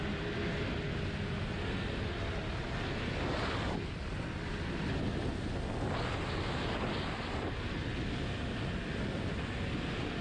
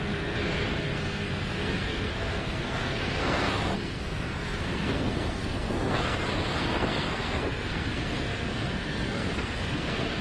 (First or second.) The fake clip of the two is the second